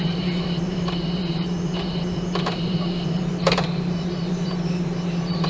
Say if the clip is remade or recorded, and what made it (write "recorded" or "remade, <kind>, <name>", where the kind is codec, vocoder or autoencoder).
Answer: remade, vocoder, BigVGAN v2